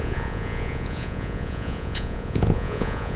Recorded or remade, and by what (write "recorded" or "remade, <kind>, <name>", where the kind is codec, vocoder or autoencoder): remade, vocoder, Vocos